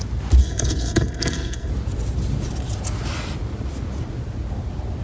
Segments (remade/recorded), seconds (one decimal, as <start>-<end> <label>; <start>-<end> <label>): 0.0-0.4 recorded; 0.4-1.7 remade; 1.7-5.0 recorded